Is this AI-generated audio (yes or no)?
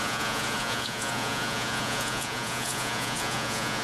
yes